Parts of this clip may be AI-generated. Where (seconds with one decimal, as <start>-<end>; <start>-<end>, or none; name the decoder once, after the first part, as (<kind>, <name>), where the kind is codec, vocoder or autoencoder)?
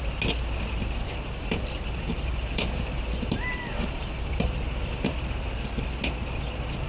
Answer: 1.0-5.1 (vocoder, BigVGAN v2)